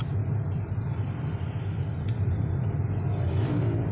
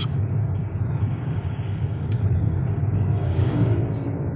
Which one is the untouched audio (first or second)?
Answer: first